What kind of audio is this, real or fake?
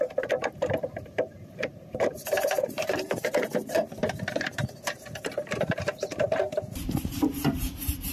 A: fake